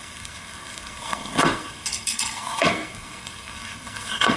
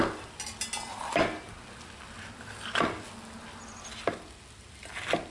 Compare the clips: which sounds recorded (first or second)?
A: second